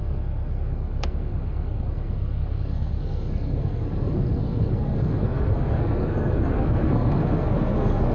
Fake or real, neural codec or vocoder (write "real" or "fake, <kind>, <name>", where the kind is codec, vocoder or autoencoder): fake, codec, SNAC